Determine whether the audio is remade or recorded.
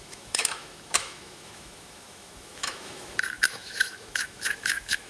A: remade